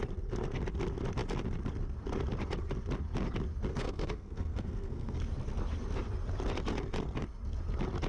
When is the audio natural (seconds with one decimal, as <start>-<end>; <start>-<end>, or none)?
0.0-3.7; 5.2-8.1